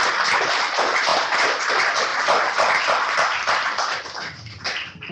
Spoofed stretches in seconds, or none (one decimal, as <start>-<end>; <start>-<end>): none